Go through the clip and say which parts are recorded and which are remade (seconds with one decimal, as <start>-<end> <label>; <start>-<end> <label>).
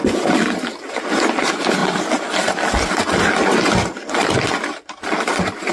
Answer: 0.0-1.8 remade; 1.8-5.2 recorded; 5.2-5.7 remade